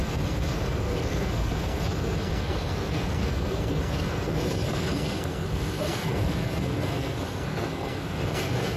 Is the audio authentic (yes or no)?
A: no